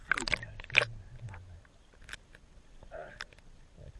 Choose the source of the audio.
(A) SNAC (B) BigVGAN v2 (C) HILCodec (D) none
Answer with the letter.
D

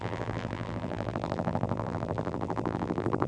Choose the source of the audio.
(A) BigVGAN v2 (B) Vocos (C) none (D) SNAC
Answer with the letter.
A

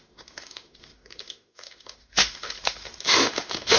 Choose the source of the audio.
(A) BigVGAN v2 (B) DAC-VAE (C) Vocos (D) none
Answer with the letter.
B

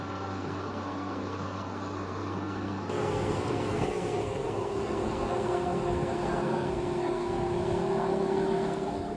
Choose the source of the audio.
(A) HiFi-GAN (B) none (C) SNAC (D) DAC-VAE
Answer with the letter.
C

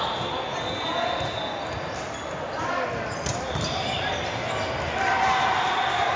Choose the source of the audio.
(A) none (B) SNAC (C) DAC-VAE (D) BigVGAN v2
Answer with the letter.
A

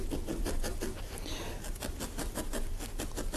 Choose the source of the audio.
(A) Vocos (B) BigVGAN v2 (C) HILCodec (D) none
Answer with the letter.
D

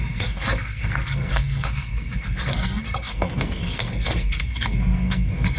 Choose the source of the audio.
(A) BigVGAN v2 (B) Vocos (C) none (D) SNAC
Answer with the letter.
D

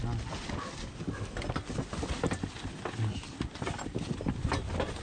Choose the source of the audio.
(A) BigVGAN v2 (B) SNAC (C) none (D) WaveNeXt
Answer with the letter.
C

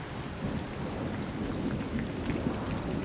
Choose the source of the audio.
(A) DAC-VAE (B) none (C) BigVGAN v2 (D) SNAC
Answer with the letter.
C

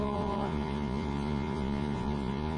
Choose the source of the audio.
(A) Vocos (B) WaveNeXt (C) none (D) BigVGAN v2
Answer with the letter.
A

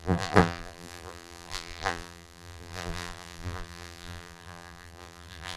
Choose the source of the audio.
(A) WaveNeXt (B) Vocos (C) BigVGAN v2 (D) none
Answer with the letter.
C